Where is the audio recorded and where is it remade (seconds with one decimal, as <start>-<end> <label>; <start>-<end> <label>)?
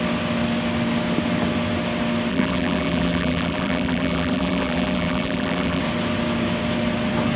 0.0-2.3 recorded; 2.3-5.8 remade; 5.8-7.4 recorded